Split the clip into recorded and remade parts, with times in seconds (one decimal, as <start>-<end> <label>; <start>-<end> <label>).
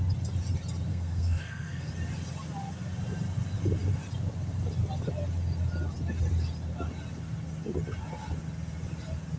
0.0-0.9 recorded; 0.9-1.9 remade; 1.9-9.4 recorded